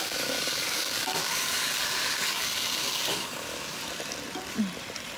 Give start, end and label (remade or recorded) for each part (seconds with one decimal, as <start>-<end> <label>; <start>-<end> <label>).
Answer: 0.0-3.8 remade; 3.8-5.2 recorded